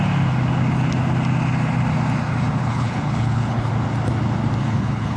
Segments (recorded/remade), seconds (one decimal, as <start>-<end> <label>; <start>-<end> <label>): 0.0-2.6 recorded; 2.6-3.7 remade; 3.7-4.6 recorded; 4.6-5.2 remade